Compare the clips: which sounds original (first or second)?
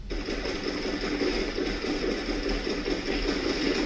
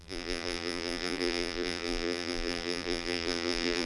first